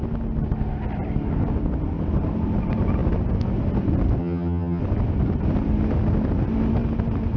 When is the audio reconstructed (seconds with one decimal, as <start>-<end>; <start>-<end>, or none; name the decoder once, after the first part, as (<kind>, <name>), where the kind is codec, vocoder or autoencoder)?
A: 4.2-4.8 (vocoder, HiFi-GAN)